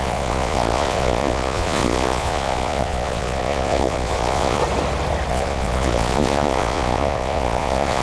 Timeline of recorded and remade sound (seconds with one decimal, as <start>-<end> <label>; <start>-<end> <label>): 0.0-4.6 remade; 4.6-5.3 recorded; 5.3-8.0 remade

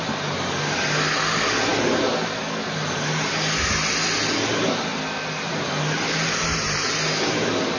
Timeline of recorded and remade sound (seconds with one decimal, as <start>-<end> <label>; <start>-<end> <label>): 0.0-4.9 recorded; 4.9-5.5 remade; 5.5-7.8 recorded

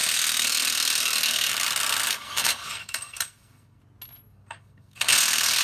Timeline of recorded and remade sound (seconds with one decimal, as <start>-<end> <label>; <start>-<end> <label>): 0.0-1.5 remade; 1.5-2.0 recorded; 2.0-3.8 remade; 3.8-4.3 recorded; 4.3-5.6 remade